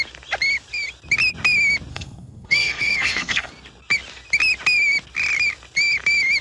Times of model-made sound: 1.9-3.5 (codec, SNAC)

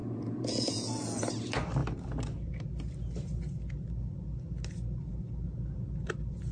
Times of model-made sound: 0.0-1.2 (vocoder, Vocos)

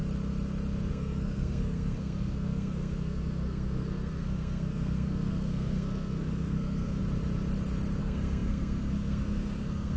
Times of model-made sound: 0.9-7.0 (codec, SNAC); 8.0-10.0

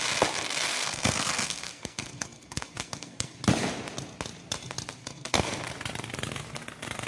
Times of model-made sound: 0.7-3.4 (codec, SNAC); 5.0-5.7

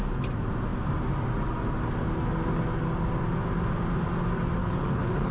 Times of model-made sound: 4.6-5.3 (codec, HILCodec)

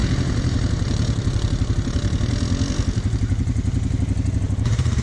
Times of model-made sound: 0.0-2.0 (vocoder, BigVGAN v2); 4.4-5.0

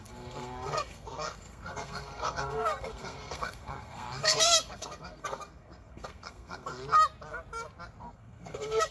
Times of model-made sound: 0.0-6.8 (codec, SNAC); 8.0-8.9